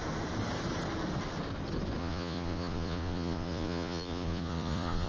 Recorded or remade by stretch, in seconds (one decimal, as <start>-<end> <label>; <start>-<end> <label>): 0.0-2.0 recorded; 2.0-5.1 remade